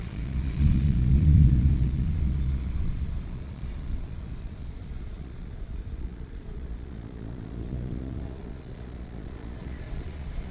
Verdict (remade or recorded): remade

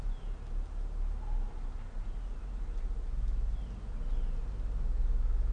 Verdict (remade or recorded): recorded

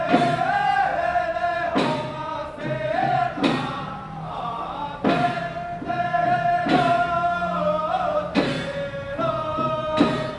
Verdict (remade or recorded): recorded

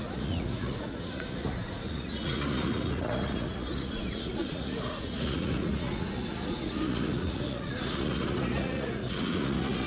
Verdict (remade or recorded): remade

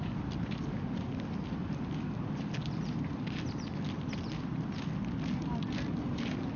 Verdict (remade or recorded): recorded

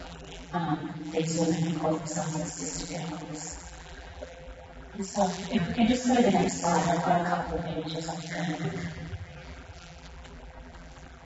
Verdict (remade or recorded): remade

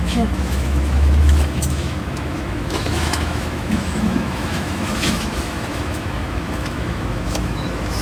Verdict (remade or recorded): remade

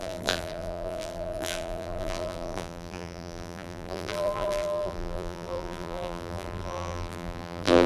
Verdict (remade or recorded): remade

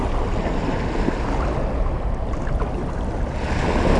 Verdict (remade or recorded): recorded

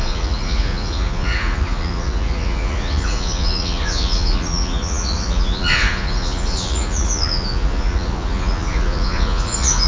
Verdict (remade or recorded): remade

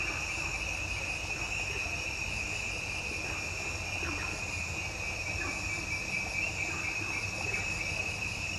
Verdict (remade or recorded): recorded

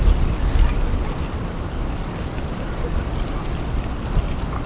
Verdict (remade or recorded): recorded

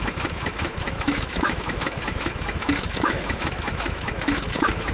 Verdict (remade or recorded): remade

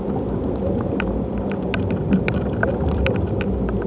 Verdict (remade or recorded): recorded